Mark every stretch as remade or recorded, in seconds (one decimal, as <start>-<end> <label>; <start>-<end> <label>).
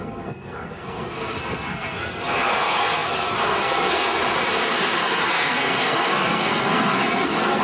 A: 0.0-4.2 remade; 4.2-5.0 recorded; 5.0-7.6 remade